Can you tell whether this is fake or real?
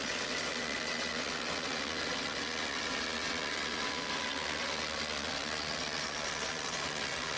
fake